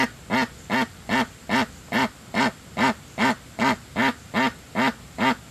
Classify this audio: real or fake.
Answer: real